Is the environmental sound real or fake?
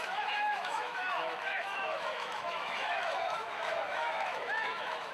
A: fake